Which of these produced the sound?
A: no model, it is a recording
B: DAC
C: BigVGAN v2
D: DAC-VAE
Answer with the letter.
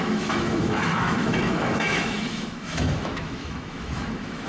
D